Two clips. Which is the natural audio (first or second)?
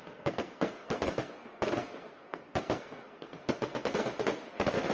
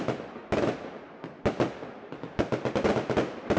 second